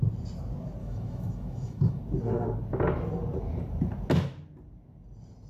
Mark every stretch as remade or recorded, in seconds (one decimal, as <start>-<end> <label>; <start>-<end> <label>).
0.0-0.8 recorded; 0.8-2.0 remade; 2.0-5.5 recorded